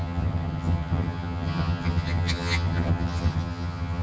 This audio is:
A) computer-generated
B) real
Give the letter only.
A